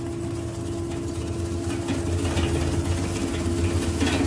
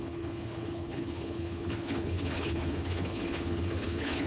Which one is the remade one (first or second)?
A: second